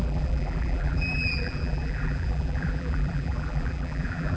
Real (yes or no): no